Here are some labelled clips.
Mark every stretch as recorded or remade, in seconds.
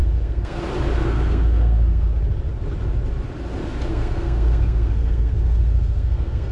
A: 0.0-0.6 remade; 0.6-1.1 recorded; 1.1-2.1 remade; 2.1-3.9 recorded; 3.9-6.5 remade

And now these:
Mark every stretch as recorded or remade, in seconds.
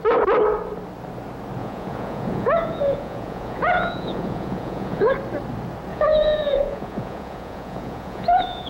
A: 0.0-1.6 recorded; 1.6-5.1 remade; 5.1-5.9 recorded; 5.9-8.7 remade